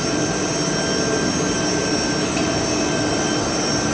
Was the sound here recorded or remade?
recorded